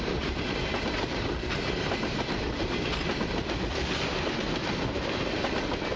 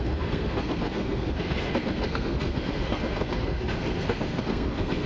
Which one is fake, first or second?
second